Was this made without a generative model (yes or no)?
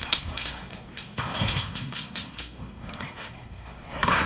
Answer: no